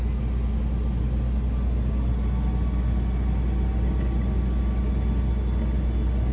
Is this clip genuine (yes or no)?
yes